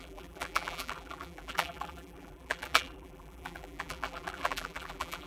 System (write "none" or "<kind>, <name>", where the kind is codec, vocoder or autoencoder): vocoder, BigVGAN v2